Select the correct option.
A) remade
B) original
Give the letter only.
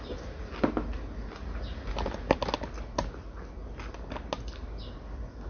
B